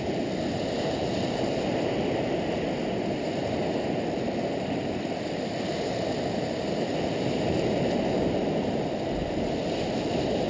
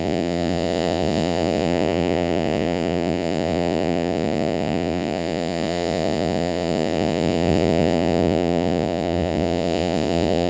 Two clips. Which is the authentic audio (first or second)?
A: first